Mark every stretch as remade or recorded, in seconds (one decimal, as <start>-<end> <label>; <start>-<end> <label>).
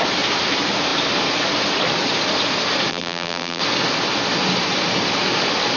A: 0.0-2.9 recorded; 2.9-3.6 remade; 3.6-5.8 recorded